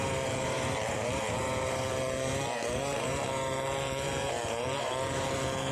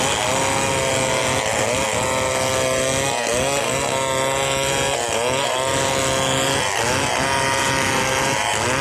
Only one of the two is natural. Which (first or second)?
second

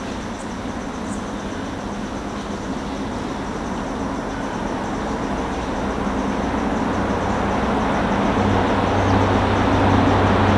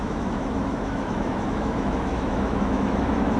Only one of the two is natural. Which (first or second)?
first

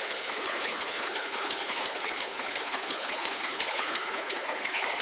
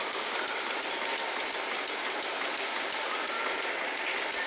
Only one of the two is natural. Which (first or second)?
second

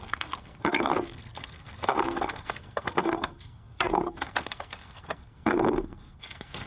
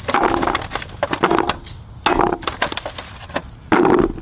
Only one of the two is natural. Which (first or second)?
second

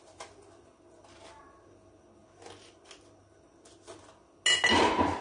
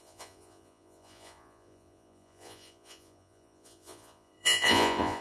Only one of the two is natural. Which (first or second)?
first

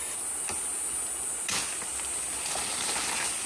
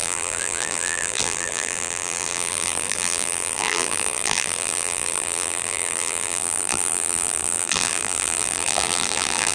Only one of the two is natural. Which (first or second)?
first